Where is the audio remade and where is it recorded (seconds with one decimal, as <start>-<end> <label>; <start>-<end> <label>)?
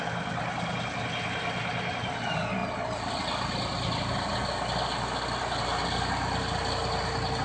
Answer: 0.0-7.4 recorded